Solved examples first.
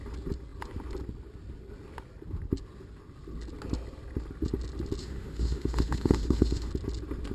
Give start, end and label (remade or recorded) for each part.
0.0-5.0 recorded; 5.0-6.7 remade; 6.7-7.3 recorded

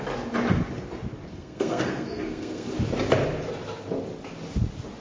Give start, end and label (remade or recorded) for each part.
0.0-1.3 recorded; 1.3-2.7 remade; 2.7-5.0 recorded

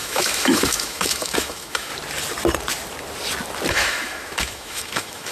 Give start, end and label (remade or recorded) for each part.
0.0-1.9 remade; 1.9-3.7 recorded; 3.7-5.3 remade

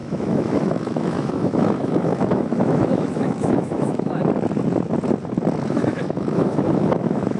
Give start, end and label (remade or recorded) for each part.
0.0-4.2 remade; 4.2-5.7 recorded; 5.7-7.4 remade

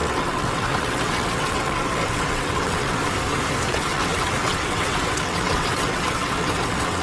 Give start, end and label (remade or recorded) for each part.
0.0-3.0 remade; 3.0-3.6 recorded; 3.6-7.0 remade

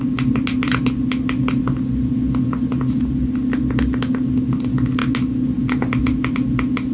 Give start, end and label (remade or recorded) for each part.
0.0-6.9 recorded

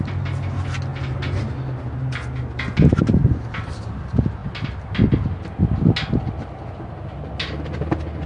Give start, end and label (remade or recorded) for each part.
0.0-8.3 recorded

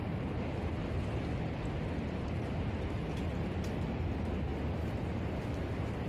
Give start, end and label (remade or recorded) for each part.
0.0-0.8 recorded; 0.8-1.4 remade; 1.4-6.1 recorded